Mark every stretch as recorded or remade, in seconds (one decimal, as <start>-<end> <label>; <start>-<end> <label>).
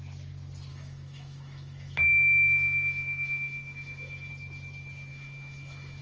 0.0-0.7 recorded; 0.7-4.3 remade; 4.3-5.1 recorded; 5.1-6.0 remade